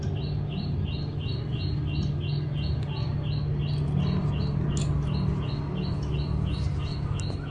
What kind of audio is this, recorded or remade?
recorded